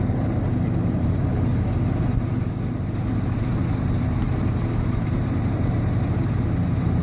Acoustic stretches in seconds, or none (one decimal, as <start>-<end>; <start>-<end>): 1.5-2.3